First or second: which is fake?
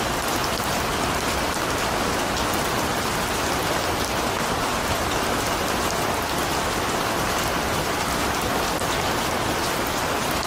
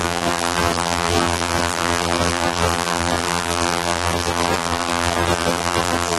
second